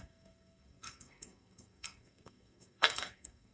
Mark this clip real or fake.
fake